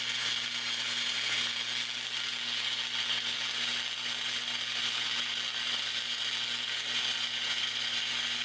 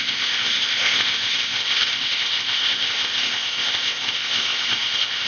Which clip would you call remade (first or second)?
second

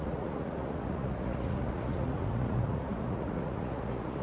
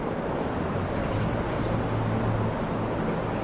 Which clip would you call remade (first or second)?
first